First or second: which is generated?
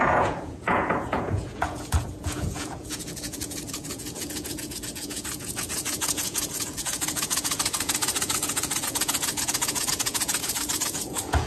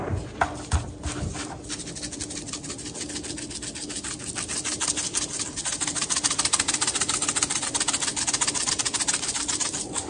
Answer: first